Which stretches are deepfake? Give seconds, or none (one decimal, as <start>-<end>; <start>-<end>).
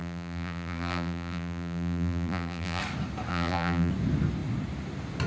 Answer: 0.0-2.8; 3.3-3.9